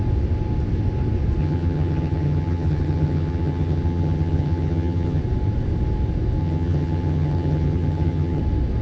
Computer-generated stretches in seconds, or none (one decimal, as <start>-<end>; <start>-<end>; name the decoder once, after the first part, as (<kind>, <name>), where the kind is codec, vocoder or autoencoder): 1.4-5.2 (vocoder, HiFi-GAN); 6.4-8.4